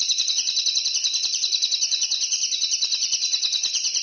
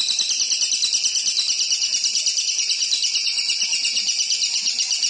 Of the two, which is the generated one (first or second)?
first